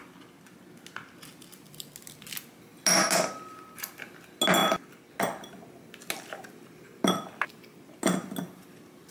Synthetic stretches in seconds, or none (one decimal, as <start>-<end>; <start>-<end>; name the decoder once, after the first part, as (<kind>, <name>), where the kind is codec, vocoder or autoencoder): none